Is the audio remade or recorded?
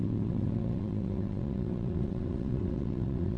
remade